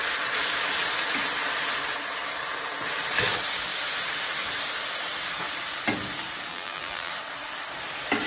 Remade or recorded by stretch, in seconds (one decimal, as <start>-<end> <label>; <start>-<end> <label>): 0.0-6.5 recorded; 6.5-7.1 remade; 7.1-8.3 recorded